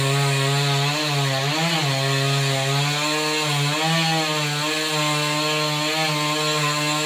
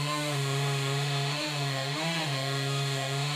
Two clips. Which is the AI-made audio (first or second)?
second